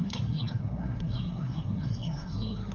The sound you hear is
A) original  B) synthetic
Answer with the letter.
B